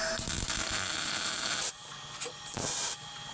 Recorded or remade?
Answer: recorded